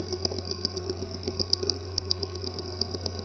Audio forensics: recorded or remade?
remade